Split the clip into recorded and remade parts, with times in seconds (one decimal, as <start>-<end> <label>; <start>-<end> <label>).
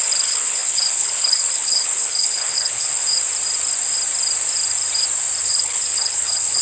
0.0-3.0 remade; 3.0-5.4 recorded; 5.4-6.6 remade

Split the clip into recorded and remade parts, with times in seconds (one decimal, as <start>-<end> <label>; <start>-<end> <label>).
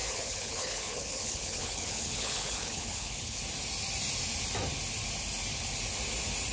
0.0-3.4 remade; 3.4-6.5 recorded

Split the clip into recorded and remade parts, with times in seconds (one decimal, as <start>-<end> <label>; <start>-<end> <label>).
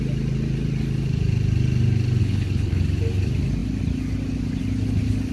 0.0-2.2 recorded; 2.2-2.8 remade; 2.8-5.3 recorded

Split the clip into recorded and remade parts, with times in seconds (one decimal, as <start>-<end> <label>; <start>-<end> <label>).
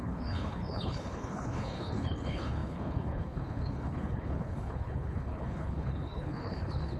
0.0-7.0 remade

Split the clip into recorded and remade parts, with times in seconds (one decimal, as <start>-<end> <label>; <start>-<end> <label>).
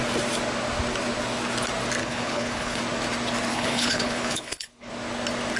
0.0-2.0 recorded; 2.0-2.8 remade; 2.8-3.5 recorded; 3.5-4.9 remade; 4.9-5.6 recorded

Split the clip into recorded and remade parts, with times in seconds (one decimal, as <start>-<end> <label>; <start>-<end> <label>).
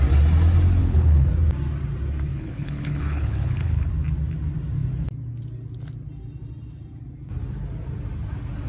0.0-0.8 recorded; 0.8-1.3 remade; 1.3-2.3 recorded; 2.3-3.9 remade; 3.9-8.7 recorded